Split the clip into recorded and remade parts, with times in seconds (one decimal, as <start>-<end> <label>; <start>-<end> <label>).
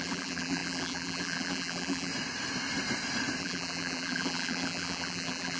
0.0-2.1 remade; 2.1-3.4 recorded; 3.4-5.6 remade